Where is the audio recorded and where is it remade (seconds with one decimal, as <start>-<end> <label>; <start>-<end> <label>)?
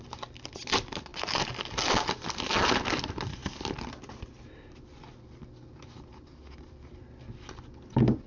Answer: 0.0-8.3 recorded